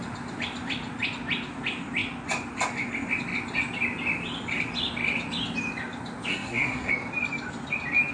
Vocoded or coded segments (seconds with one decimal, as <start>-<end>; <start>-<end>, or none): 6.3-6.9